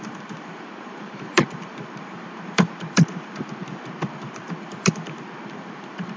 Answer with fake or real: fake